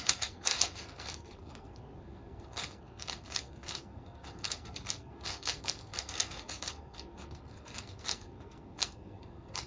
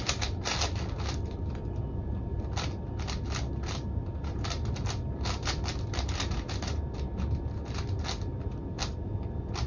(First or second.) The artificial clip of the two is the first